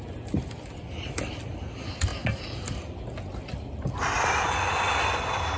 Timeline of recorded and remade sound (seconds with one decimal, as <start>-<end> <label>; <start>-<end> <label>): 0.0-5.6 recorded